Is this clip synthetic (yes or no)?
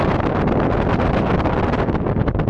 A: no